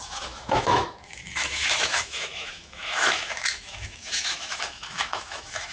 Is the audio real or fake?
fake